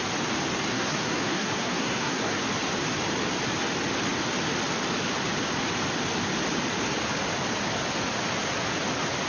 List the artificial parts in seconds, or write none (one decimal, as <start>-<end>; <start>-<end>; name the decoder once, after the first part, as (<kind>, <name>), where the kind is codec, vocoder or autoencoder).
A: 0.7-2.4 (codec, SNAC)